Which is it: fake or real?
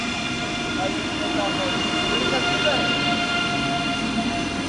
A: real